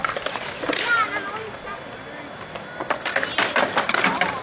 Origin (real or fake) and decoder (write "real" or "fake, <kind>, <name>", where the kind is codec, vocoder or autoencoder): real